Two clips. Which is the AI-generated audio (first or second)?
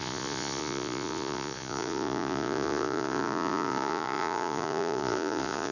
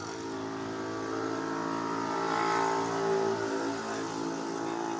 first